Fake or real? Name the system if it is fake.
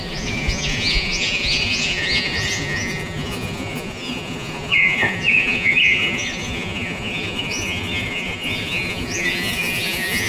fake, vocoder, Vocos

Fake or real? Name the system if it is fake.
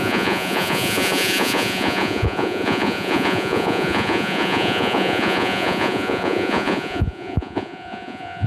fake, vocoder, Vocos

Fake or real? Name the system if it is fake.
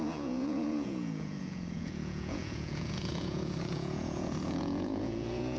fake, vocoder, Vocos